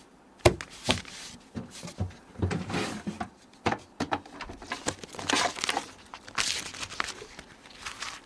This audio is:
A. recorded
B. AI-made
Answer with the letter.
A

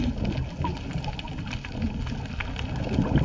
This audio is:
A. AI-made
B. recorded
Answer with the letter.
B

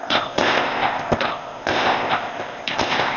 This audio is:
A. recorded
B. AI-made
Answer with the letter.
B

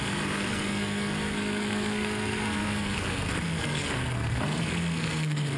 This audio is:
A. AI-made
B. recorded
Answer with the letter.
A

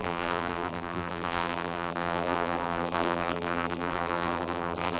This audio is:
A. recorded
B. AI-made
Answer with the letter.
B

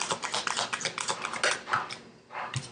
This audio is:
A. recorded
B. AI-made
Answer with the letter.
A